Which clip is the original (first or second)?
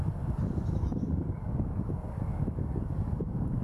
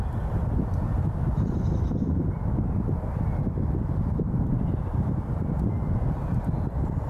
second